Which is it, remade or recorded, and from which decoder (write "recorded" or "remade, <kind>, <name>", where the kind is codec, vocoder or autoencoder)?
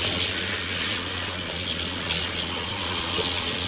remade, vocoder, Vocos